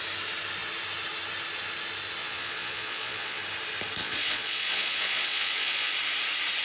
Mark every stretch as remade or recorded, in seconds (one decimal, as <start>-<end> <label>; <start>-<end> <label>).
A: 0.0-2.2 recorded; 2.2-3.4 remade; 3.4-4.0 recorded; 4.0-5.9 remade; 5.9-6.6 recorded